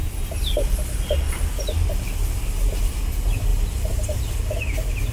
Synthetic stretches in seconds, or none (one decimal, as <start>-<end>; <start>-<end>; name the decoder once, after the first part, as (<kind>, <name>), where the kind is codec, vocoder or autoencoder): 3.5-4.3 (vocoder, BigVGAN v2)

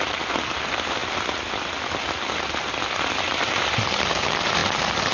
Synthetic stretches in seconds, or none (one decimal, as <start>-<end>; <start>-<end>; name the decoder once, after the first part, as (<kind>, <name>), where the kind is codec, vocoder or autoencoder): 0.0-1.0 (vocoder, BigVGAN v2); 4.1-5.1

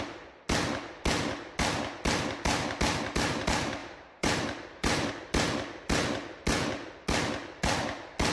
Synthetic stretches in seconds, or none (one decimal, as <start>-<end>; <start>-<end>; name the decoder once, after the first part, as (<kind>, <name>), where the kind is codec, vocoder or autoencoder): 3.8-5.1 (vocoder, BigVGAN v2)

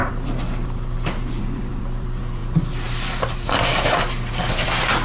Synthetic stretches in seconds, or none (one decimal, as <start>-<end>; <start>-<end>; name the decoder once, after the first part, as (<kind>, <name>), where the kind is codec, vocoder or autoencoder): 0.0-2.4 (vocoder, BigVGAN v2); 3.3-5.0

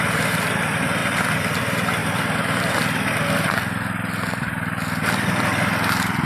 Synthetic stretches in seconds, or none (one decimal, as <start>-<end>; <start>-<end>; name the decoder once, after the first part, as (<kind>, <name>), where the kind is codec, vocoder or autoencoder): none